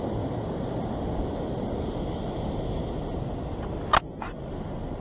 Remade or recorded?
recorded